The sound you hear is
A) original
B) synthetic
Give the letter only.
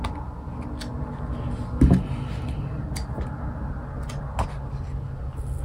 A